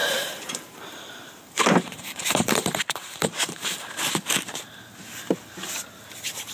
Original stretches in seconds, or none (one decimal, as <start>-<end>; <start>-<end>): 3.9-6.5